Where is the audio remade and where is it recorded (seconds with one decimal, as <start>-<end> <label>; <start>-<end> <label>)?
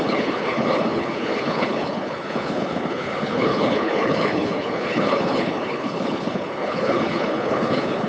0.0-8.1 remade